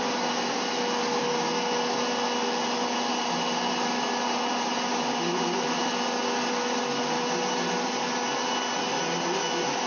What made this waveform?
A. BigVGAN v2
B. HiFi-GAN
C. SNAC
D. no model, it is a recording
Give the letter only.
D